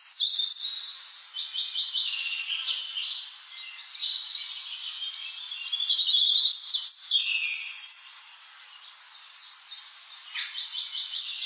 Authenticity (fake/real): real